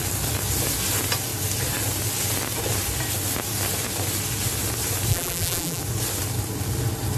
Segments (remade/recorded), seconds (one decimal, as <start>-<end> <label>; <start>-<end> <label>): 0.0-5.1 recorded; 5.1-5.8 remade; 5.8-7.2 recorded